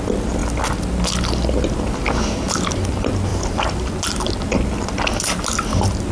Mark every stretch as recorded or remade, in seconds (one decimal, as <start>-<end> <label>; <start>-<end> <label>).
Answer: 0.0-3.3 recorded; 3.3-3.9 remade; 3.9-6.1 recorded